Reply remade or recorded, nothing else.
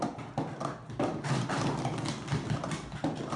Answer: recorded